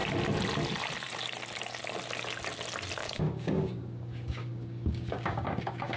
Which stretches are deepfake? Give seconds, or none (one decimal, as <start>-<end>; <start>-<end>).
3.0-6.0